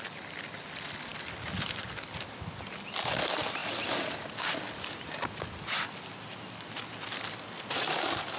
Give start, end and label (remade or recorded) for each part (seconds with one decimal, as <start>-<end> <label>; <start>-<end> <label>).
0.0-8.4 recorded